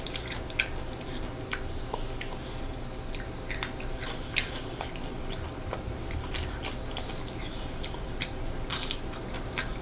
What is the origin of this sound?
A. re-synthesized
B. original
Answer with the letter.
B